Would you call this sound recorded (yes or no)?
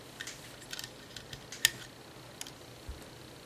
yes